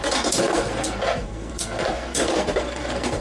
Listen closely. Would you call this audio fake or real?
fake